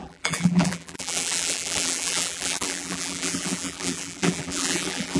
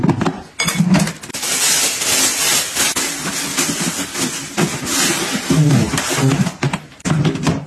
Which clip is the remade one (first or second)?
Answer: first